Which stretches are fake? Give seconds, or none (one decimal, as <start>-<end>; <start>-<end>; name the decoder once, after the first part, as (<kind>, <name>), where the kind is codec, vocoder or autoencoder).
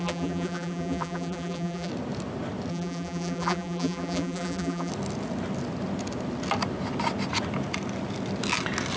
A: 0.0-1.9 (vocoder, BigVGAN v2); 2.7-4.9